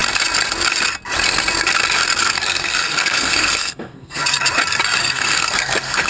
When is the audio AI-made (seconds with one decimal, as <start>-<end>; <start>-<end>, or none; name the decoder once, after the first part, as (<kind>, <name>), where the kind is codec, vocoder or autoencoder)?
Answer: 2.2-4.2 (codec, SNAC); 5.0-6.1